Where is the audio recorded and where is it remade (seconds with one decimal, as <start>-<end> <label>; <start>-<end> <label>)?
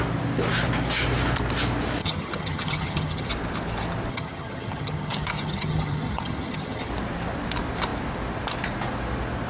0.0-2.0 recorded; 2.0-3.3 remade; 3.3-4.1 recorded; 4.1-6.9 remade; 6.9-9.5 recorded